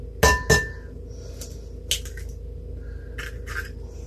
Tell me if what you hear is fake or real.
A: real